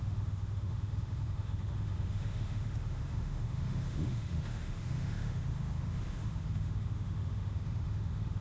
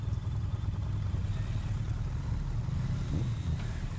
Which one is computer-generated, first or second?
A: first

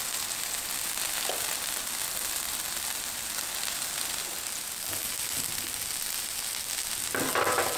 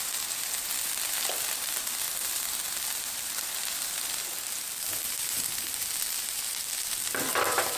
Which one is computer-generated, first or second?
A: second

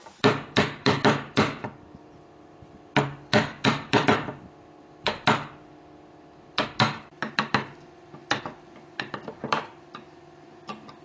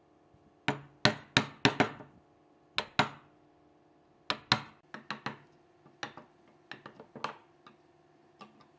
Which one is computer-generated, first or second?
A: first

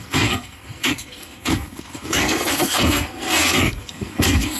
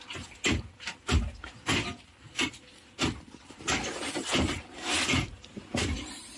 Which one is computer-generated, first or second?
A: first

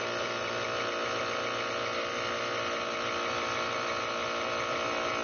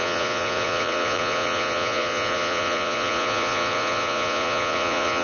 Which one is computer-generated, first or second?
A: second